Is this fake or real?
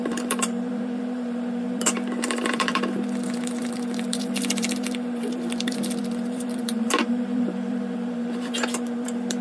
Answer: fake